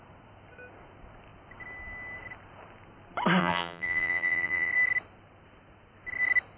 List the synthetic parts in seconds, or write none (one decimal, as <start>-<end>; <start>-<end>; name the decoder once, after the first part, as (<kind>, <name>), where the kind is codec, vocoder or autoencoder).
3.4-4.7 (vocoder, BigVGAN v2)